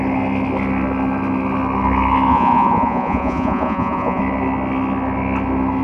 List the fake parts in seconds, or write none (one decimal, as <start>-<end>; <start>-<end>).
2.3-4.2